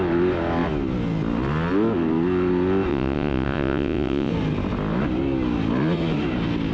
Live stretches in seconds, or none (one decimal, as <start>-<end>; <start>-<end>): 0.0-2.9; 4.3-6.7